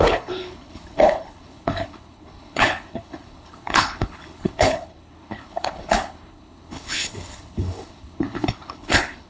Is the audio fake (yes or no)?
yes